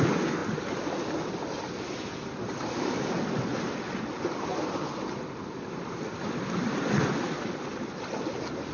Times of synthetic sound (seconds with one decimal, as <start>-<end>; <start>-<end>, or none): none